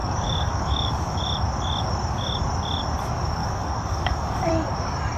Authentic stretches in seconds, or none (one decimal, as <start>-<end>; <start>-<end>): 1.2-3.4; 4.5-5.2